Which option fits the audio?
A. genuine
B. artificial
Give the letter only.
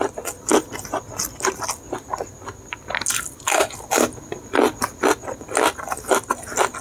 A